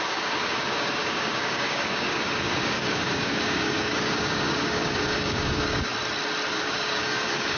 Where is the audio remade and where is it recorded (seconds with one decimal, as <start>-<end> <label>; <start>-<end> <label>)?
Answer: 0.0-5.9 remade; 5.9-6.5 recorded; 6.5-7.6 remade